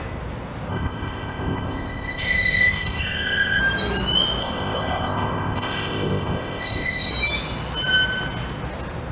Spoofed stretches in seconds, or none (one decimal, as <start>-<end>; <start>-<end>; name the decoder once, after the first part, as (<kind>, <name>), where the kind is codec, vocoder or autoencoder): 0.7-3.6 (codec, ZipCodec); 4.4-7.1